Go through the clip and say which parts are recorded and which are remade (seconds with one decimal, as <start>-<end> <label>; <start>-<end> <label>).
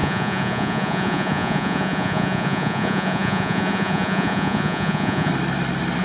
0.0-5.3 remade; 5.3-6.0 recorded